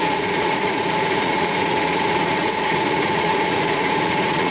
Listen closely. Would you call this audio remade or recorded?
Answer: remade